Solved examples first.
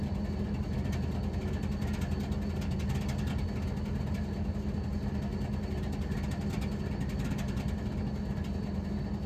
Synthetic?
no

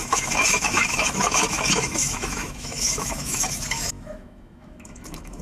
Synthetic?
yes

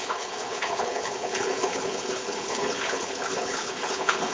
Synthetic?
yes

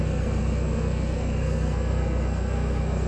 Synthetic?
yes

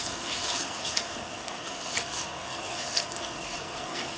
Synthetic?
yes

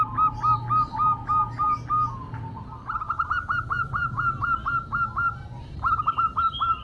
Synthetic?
no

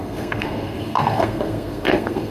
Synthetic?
yes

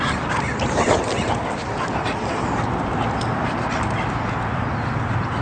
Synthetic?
no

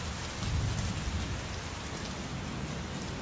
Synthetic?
no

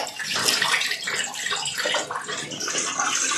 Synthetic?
no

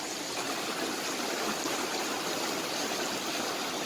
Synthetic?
no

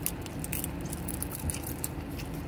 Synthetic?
no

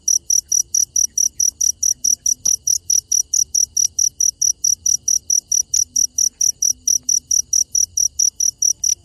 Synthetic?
no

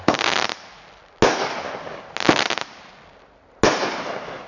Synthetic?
no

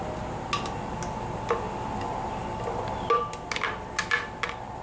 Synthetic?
no